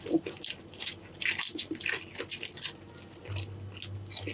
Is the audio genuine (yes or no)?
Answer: yes